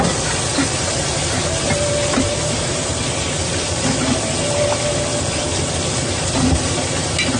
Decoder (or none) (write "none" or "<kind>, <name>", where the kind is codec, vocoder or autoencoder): none